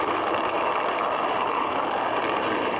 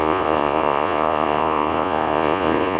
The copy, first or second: second